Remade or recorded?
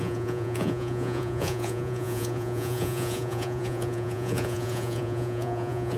remade